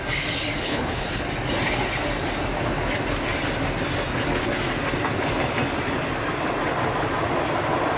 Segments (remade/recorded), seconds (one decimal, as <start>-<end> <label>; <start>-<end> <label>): 0.0-0.6 recorded; 0.6-1.2 remade; 1.2-8.0 recorded